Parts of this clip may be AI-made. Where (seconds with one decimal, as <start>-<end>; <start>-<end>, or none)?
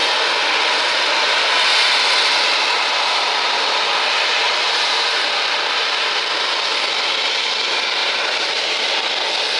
4.3-5.9; 8.0-8.6